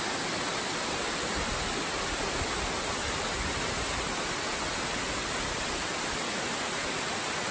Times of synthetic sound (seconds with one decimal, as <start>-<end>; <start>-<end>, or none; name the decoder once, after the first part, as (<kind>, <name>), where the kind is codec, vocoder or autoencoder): none